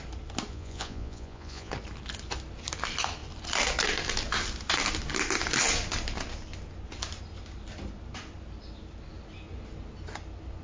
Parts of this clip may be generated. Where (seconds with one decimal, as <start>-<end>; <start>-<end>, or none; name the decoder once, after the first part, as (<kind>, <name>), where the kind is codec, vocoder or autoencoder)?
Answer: 0.5-1.7 (vocoder, Vocos)